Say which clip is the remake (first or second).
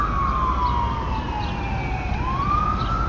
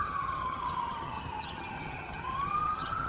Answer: second